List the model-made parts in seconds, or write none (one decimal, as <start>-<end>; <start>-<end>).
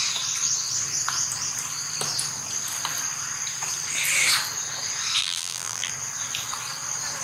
5.2-5.9